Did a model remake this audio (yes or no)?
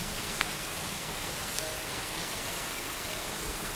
yes